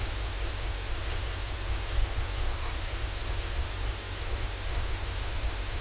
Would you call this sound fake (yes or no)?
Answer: yes